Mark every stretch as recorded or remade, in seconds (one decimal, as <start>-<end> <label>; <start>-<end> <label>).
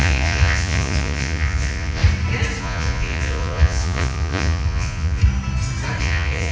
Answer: 0.0-2.0 remade; 2.0-2.6 recorded; 2.6-5.2 remade; 5.2-6.0 recorded; 6.0-6.5 remade